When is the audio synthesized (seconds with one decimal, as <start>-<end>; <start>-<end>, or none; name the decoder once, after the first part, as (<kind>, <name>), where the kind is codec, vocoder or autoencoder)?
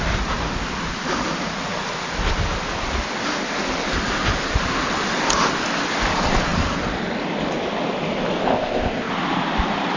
8.5-9.1 (codec, ZipCodec)